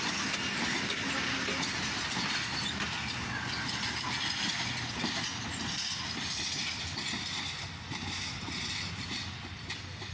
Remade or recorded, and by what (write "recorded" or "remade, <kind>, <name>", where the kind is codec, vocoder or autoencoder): recorded